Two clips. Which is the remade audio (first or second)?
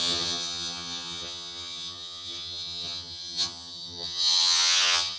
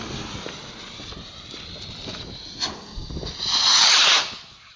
first